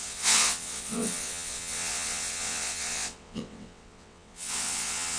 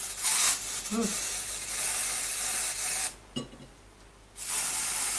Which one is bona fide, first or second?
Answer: second